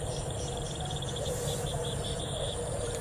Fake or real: fake